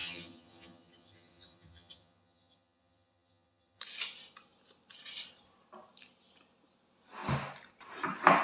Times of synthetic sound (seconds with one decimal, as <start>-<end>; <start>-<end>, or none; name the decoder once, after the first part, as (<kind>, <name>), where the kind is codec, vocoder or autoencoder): 0.0-3.8 (vocoder, HiFi-GAN)

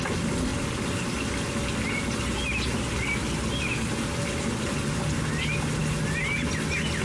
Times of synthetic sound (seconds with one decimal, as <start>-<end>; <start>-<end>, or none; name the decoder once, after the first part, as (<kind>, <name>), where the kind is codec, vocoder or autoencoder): none